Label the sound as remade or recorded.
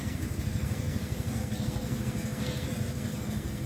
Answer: remade